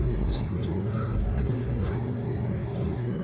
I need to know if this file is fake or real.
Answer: fake